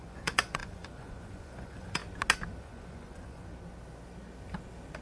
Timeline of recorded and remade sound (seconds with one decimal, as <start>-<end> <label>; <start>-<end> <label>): 0.0-2.0 remade; 2.0-2.6 recorded; 2.6-3.5 remade; 3.5-5.0 recorded